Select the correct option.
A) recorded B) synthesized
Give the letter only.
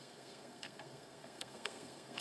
B